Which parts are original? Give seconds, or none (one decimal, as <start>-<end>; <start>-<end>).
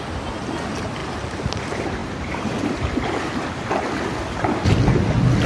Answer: 0.0-1.0; 1.6-2.0; 2.9-5.5